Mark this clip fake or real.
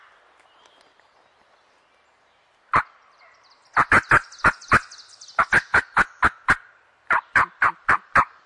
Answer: real